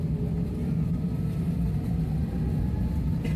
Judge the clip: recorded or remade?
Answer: recorded